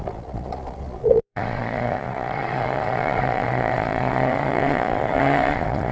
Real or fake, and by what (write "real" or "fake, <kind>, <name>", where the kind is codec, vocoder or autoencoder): fake, vocoder, Vocos